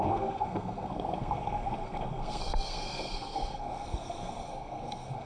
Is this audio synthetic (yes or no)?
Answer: yes